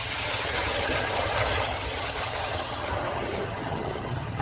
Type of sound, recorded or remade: remade